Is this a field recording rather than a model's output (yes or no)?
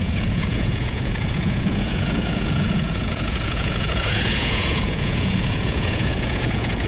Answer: no